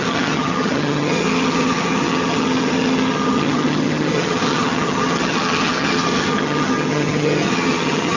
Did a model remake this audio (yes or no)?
yes